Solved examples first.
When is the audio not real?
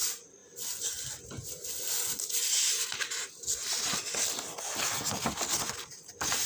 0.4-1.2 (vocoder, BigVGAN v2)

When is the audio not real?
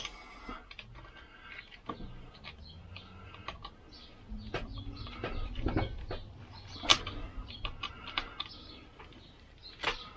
8.9-9.5 (vocoder, BigVGAN v2)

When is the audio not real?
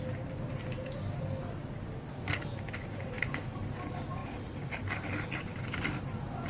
0.0-6.5 (vocoder, BigVGAN v2)